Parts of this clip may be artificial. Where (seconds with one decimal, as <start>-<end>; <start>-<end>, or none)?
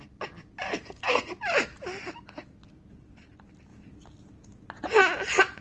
0.7-1.3